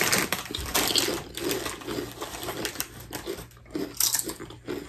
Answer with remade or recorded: recorded